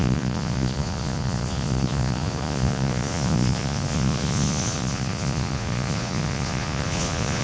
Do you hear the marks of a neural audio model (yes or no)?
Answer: yes